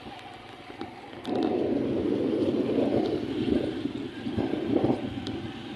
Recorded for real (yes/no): yes